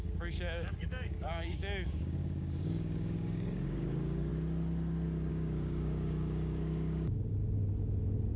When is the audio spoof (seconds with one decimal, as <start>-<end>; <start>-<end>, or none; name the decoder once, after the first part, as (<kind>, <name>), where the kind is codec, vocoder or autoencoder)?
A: 0.0-4.3 (codec, DAC); 5.3-7.4